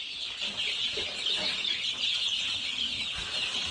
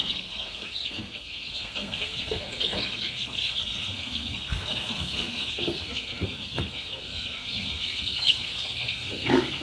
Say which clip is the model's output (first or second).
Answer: second